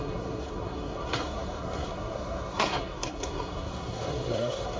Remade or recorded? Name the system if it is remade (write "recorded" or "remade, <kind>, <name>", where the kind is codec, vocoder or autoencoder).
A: remade, codec, SNAC